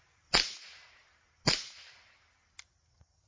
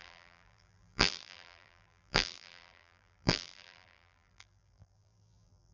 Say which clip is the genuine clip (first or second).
first